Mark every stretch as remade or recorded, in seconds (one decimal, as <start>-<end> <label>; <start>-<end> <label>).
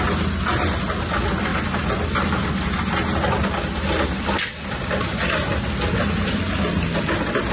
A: 0.0-7.5 recorded